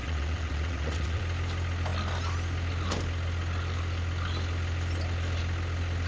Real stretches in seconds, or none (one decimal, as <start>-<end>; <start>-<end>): 1.2-6.1